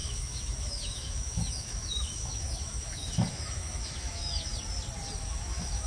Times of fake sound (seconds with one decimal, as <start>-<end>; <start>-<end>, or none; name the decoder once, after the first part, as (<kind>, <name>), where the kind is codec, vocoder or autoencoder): 0.0-4.5 (autoencoder, DAC-VAE); 5.2-5.9